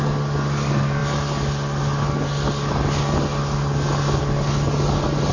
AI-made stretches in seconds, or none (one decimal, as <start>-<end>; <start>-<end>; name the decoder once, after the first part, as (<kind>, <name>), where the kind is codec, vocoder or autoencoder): none